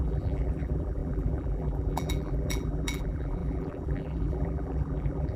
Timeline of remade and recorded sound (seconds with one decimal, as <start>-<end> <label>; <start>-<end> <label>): 0.0-5.4 remade